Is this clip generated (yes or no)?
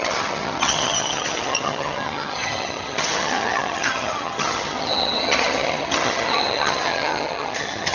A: yes